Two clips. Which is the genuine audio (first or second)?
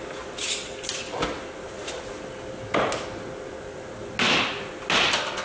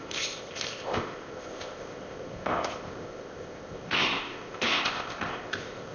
first